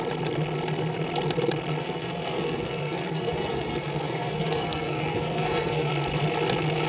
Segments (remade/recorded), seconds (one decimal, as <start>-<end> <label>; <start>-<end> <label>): 0.0-1.8 recorded; 1.8-5.9 remade; 5.9-6.9 recorded